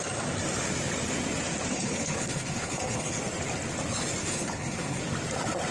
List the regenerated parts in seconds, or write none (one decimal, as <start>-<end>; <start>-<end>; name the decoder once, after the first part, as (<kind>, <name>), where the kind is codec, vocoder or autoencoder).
1.7-3.2 (codec, HILCodec); 4.2-5.0